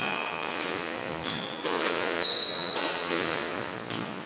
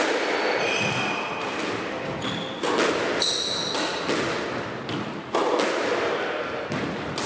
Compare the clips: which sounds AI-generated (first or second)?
first